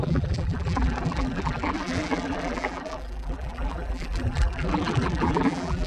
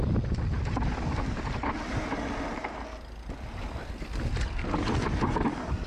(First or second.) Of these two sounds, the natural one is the second